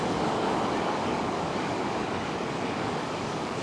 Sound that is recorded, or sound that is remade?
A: remade